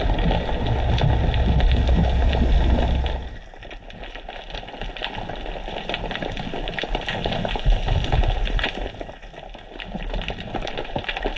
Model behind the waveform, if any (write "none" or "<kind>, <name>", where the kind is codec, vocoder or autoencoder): none